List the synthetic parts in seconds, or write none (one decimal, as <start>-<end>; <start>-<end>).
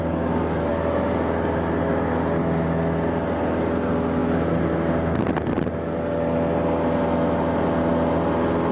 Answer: none